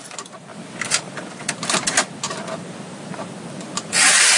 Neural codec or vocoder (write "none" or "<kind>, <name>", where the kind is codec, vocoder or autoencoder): vocoder, BigVGAN v2